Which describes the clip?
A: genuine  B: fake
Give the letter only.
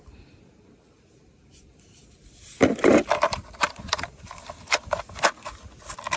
A